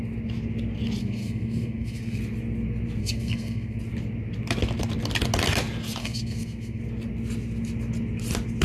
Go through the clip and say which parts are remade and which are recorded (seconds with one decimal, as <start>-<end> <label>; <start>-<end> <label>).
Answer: 0.0-1.0 recorded; 1.0-2.2 remade; 2.2-3.0 recorded; 3.0-3.8 remade; 3.8-6.0 recorded; 6.0-6.8 remade; 6.8-8.6 recorded